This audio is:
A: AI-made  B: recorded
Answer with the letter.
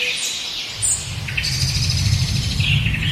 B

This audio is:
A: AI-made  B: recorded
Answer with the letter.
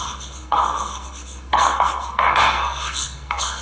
A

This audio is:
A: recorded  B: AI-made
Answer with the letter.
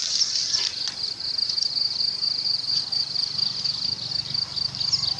A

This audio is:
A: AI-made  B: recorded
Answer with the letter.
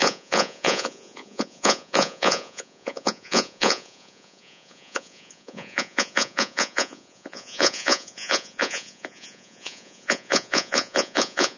A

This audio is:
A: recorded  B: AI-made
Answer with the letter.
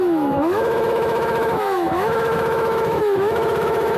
B